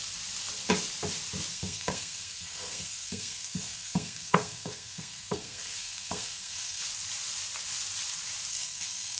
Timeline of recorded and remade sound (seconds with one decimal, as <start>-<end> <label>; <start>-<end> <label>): 0.0-1.5 recorded; 1.5-6.8 remade; 6.8-8.5 recorded; 8.5-9.2 remade